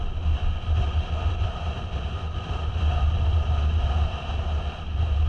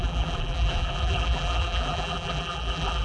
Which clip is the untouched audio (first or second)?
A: first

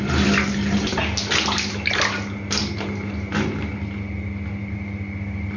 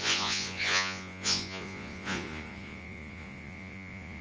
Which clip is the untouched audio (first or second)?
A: first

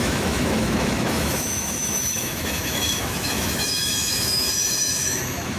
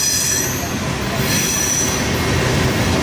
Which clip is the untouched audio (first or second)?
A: second